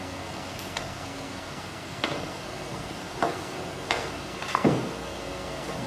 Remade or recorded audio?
remade